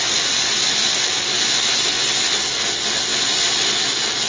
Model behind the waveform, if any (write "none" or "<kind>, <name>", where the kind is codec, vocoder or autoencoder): none